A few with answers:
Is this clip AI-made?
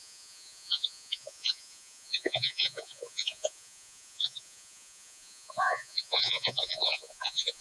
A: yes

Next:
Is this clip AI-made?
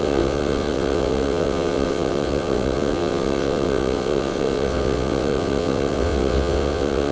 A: yes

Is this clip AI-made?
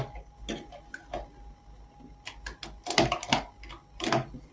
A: no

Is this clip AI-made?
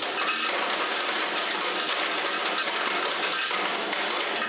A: no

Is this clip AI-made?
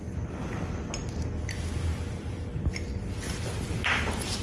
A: no